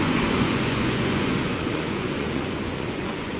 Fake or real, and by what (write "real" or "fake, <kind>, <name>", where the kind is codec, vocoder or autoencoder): fake, vocoder, Vocos